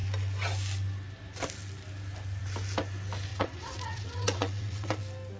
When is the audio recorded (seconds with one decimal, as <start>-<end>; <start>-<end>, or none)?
0.0-3.3; 5.0-5.4

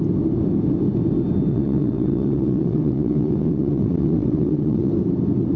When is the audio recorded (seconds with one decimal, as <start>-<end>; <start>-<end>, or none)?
0.0-1.5; 4.9-5.6

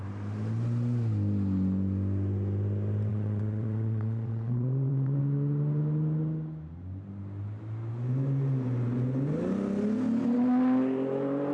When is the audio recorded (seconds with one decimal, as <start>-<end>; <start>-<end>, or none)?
0.0-3.1; 5.2-11.5